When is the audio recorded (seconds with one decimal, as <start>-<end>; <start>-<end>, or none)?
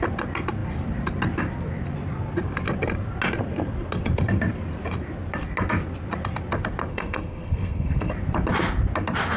0.0-6.9; 8.1-9.4